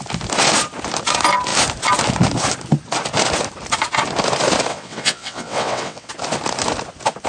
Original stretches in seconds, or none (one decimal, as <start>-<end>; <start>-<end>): 0.0-4.7; 6.1-7.3